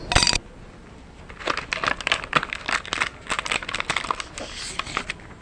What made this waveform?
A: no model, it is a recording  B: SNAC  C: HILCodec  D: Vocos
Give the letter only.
A